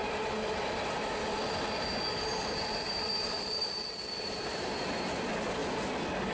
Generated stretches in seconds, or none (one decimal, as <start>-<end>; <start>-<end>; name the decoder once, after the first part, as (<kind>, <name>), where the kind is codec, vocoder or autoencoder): 2.4-5.1 (vocoder, BigVGAN v2)